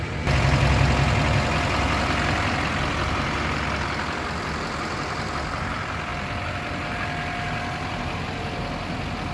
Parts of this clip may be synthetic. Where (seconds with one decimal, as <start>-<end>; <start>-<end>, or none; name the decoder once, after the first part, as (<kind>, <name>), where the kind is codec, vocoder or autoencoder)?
none